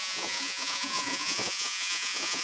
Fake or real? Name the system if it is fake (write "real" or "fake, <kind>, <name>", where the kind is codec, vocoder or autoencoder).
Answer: fake, vocoder, Vocos